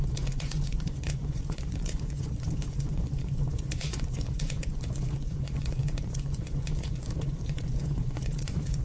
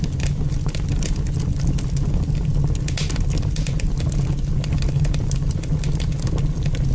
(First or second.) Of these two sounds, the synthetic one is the first